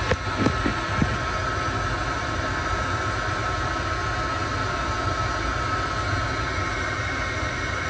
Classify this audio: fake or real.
real